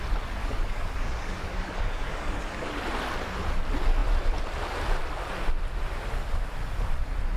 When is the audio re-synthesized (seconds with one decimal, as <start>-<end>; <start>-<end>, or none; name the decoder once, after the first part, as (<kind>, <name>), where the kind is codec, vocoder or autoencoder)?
0.4-2.7 (codec, DAC)